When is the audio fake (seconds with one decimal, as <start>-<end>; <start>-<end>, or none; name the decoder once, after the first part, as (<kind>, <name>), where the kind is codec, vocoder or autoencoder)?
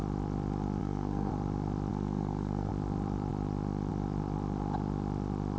0.8-1.3 (codec, SNAC); 1.9-2.7